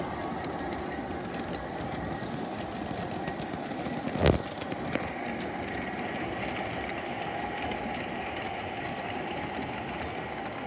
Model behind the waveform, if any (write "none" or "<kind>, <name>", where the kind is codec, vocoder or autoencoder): none